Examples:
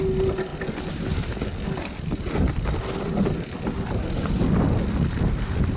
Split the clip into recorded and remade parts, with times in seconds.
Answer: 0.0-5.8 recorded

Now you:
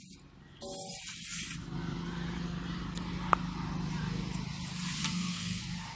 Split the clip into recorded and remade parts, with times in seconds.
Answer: 0.0-5.0 recorded; 5.0-5.6 remade; 5.6-6.0 recorded

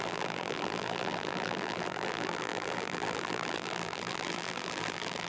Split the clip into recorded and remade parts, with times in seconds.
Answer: 0.0-5.3 remade

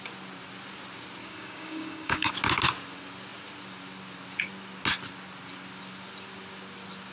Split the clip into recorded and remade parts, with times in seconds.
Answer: 0.0-1.2 recorded; 1.2-2.3 remade; 2.3-7.1 recorded

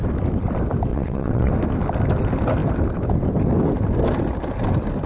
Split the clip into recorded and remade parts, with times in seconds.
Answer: 0.0-0.9 recorded; 0.9-1.5 remade; 1.5-5.1 recorded

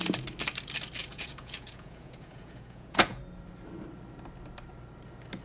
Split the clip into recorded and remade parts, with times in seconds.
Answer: 0.0-1.0 recorded; 1.0-3.2 remade; 3.2-5.4 recorded

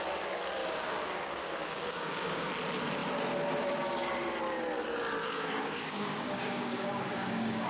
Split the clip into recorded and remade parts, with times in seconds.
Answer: 0.0-0.6 recorded; 0.6-2.5 remade; 2.5-5.2 recorded; 5.2-7.7 remade